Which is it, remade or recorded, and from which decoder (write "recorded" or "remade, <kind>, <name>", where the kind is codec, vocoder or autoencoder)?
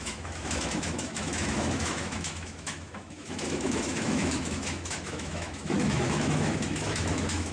remade, autoencoder, DAC-VAE